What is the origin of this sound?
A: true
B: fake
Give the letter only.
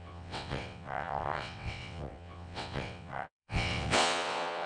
B